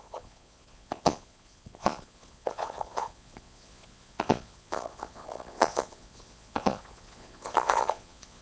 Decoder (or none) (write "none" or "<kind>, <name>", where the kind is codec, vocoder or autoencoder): vocoder, Vocos